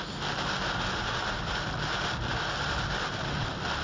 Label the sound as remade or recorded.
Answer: recorded